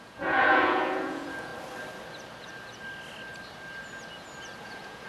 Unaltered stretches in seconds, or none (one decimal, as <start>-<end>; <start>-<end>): 1.5-4.6